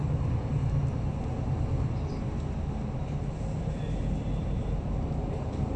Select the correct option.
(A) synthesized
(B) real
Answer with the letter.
B